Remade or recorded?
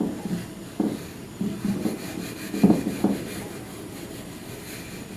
recorded